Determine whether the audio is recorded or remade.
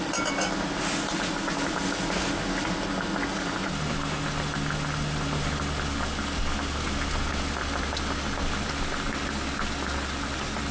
recorded